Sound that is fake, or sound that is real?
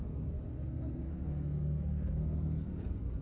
fake